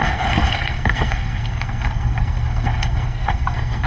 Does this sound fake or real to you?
fake